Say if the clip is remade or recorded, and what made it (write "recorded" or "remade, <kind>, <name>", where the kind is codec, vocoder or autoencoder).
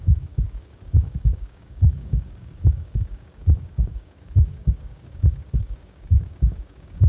remade, codec, DAC